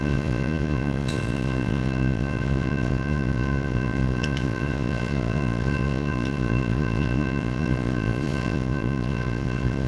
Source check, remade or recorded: remade